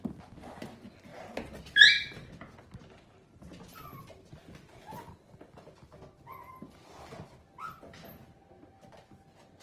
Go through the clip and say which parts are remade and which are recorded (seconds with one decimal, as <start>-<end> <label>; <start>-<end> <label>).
0.0-9.6 recorded